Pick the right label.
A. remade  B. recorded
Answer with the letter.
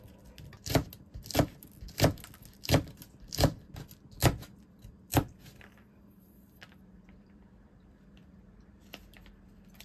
B